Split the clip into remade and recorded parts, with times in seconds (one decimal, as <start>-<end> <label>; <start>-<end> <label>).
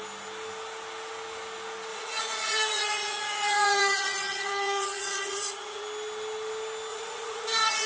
0.0-1.9 recorded; 1.9-5.8 remade; 5.8-6.9 recorded; 6.9-7.9 remade